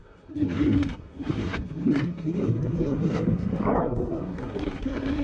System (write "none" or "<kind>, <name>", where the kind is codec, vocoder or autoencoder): codec, SNAC